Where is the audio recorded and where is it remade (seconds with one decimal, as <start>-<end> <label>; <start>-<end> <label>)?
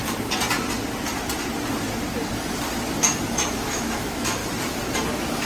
0.0-3.3 recorded; 3.3-4.4 remade; 4.4-5.5 recorded